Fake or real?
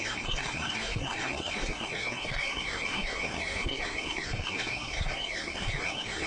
fake